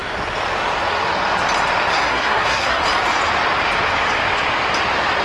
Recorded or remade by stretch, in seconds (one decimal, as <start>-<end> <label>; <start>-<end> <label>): 0.0-1.9 recorded; 1.9-2.8 remade; 2.8-5.2 recorded

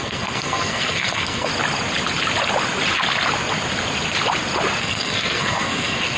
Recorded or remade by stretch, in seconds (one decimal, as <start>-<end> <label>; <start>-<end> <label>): 0.0-1.5 remade; 1.5-4.8 recorded; 4.8-6.2 remade

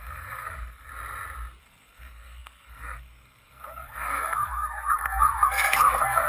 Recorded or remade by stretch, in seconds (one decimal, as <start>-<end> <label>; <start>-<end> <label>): 0.0-0.9 remade; 0.9-1.6 recorded; 1.6-6.3 remade

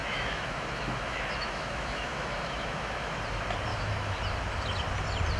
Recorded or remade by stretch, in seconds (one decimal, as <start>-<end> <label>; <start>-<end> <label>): 0.0-3.2 remade; 3.2-3.7 recorded; 3.7-4.2 remade; 4.2-5.4 recorded